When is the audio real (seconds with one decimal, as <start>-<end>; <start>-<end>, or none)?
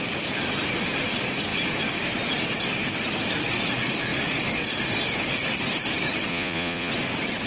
0.0-6.3; 6.9-7.5